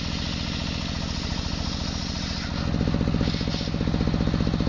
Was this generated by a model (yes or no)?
no